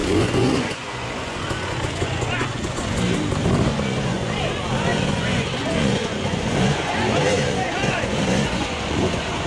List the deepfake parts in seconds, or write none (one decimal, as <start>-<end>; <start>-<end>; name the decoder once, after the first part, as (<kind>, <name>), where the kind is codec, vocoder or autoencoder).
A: 0.0-3.0 (vocoder, Vocos); 3.7-4.3; 4.9-9.5